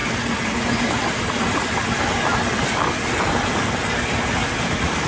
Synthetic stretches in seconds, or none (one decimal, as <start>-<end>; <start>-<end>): none